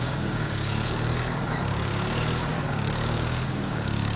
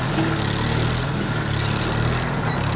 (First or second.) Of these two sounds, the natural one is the second